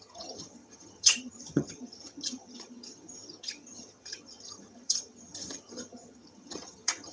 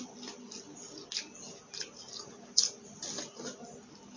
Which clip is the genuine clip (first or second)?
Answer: second